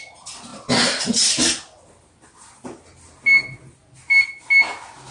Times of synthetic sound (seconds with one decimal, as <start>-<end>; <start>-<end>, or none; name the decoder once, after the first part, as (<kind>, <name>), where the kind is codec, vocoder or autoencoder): none